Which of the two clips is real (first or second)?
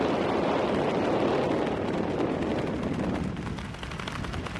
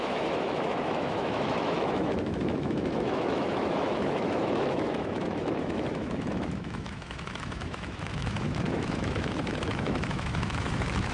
first